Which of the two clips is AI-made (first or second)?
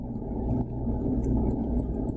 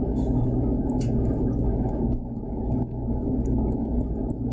second